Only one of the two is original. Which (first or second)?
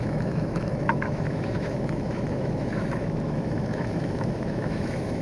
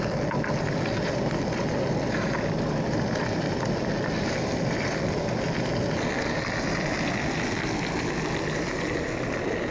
second